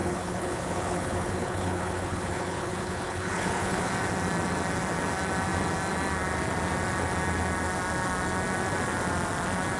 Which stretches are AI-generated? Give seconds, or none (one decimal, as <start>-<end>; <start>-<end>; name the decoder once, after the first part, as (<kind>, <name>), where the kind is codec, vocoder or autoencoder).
0.0-3.9 (codec, HILCodec)